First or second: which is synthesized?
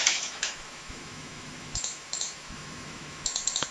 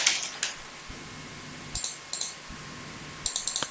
first